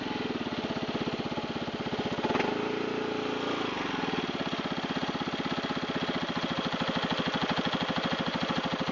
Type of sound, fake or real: real